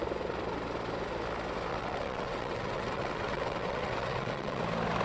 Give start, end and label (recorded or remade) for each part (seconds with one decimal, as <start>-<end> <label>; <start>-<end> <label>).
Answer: 0.0-1.7 recorded; 1.7-4.6 remade; 4.6-5.0 recorded